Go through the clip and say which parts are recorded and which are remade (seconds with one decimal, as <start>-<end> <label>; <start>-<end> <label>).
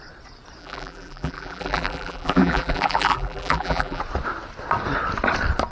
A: 0.0-0.6 recorded; 0.6-4.0 remade; 4.0-5.7 recorded